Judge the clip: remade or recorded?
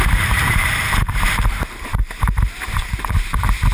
remade